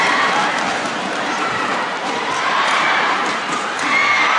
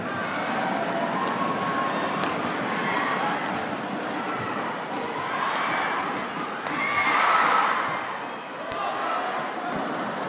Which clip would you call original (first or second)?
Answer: second